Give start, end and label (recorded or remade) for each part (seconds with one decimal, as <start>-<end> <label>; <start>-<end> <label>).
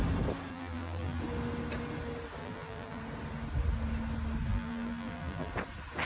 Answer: 0.0-0.5 recorded; 0.5-1.2 remade; 1.2-2.4 recorded; 2.4-3.0 remade; 3.0-4.5 recorded; 4.5-5.5 remade; 5.5-6.0 recorded